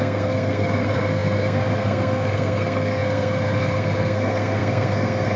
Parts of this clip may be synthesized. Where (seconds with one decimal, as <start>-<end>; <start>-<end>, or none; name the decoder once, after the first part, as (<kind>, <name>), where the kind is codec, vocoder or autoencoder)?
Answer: 0.0-5.4 (codec, SNAC)